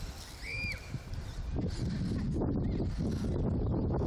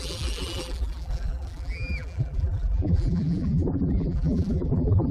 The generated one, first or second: second